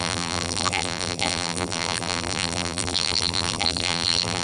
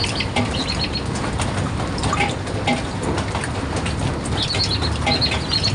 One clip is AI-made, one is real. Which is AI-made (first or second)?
first